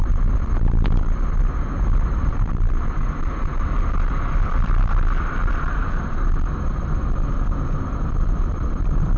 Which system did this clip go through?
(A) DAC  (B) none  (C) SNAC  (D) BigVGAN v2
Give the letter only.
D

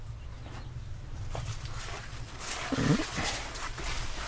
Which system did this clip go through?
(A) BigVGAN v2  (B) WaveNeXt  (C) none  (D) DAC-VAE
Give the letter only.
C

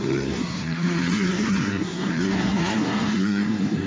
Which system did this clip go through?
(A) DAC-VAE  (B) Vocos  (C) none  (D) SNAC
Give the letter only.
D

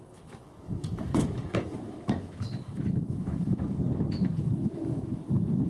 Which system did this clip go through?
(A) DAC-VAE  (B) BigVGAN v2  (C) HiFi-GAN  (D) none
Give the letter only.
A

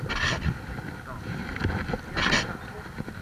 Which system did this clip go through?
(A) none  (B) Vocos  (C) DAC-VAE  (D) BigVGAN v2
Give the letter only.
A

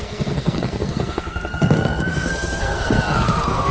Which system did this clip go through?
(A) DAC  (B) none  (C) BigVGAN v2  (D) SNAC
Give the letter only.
D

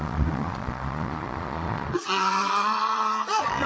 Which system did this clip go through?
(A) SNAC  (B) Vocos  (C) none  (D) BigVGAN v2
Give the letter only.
B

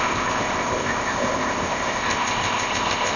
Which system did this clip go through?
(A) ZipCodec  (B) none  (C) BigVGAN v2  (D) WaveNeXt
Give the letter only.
A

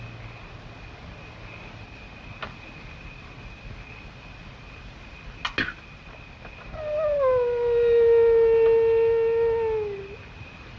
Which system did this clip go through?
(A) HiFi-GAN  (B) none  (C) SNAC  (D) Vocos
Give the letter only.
B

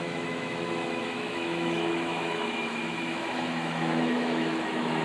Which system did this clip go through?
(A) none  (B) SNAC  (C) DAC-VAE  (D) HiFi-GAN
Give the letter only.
C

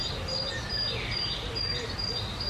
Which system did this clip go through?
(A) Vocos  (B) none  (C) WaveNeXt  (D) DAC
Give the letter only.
B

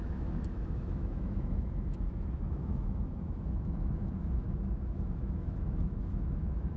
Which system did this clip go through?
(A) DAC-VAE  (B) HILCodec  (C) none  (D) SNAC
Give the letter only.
A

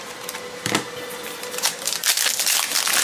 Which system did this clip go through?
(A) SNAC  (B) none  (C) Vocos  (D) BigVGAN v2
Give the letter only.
B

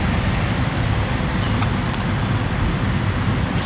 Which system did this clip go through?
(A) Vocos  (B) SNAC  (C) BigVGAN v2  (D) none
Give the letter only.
C